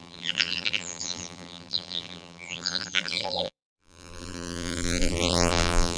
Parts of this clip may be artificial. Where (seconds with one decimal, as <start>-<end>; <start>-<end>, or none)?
0.0-6.0